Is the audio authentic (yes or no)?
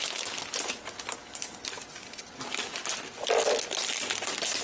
yes